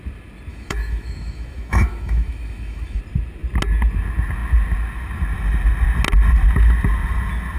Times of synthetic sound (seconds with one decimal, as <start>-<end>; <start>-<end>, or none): 0.5-3.0